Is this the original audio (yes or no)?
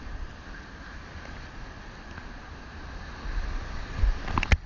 yes